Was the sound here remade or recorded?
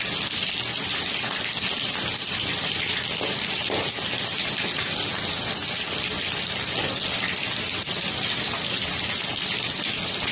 recorded